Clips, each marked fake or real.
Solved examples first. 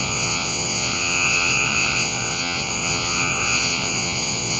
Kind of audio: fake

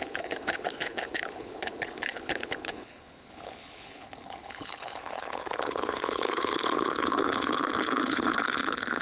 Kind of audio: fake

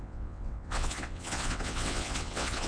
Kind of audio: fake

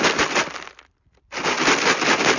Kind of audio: real